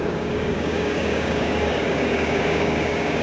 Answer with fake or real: fake